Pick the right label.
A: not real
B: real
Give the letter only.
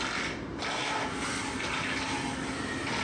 B